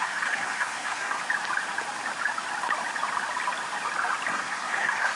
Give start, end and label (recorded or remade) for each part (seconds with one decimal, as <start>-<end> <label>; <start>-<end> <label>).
0.0-1.2 remade; 1.2-4.3 recorded; 4.3-5.2 remade